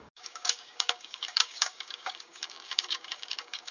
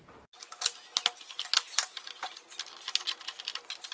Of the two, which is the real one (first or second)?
second